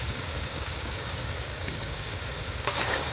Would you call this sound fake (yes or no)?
yes